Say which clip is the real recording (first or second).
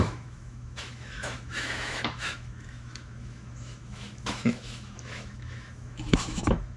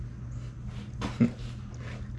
second